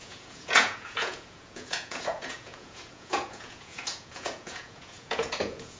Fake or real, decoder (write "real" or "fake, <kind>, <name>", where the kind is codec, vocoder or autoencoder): fake, vocoder, Vocos